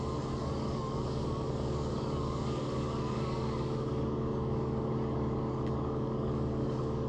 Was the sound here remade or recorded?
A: remade